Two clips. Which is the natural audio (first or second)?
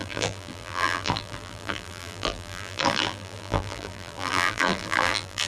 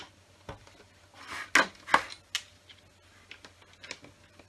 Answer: second